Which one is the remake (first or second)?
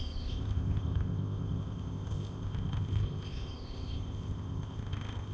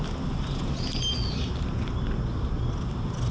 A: first